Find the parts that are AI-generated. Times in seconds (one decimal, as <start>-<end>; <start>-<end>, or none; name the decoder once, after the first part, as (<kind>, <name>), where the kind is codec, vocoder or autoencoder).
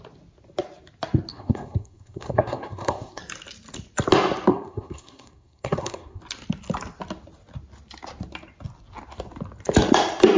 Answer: 1.3-3.2 (codec, SNAC); 4.5-6.2